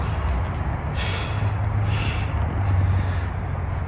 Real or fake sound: real